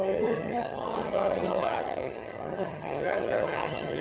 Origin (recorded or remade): remade